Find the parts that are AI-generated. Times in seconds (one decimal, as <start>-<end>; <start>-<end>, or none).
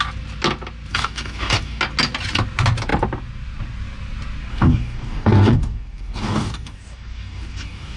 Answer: 0.9-1.8; 4.5-8.0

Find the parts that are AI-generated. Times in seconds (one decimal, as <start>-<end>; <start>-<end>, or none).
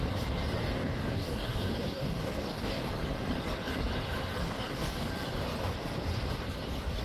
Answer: 0.6-2.9; 4.4-4.9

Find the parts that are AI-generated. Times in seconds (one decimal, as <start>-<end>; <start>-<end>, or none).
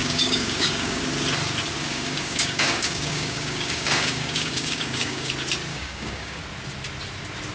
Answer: 0.0-1.0; 1.8-5.3; 5.7-6.4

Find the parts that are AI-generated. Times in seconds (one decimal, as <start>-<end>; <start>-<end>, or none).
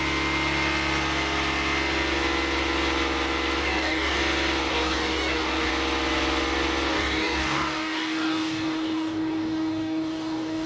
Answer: 3.6-4.2; 4.7-5.7; 6.9-10.7